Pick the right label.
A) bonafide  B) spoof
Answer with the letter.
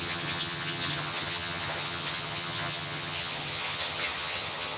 B